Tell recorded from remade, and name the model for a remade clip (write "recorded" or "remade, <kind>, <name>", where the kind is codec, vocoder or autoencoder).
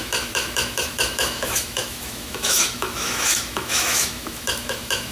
remade, autoencoder, DAC-VAE